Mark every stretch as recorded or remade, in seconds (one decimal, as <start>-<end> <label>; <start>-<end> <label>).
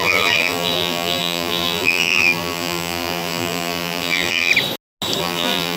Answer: 0.0-4.5 remade; 4.5-5.2 recorded; 5.2-5.8 remade